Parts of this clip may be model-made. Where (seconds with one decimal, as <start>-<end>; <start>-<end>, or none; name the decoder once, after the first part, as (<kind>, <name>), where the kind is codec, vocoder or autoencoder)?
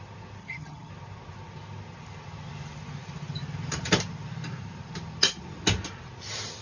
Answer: 0.4-0.9 (vocoder, HiFi-GAN)